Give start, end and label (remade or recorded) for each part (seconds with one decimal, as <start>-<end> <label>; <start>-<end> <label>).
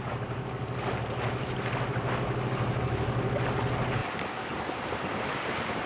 0.0-5.9 recorded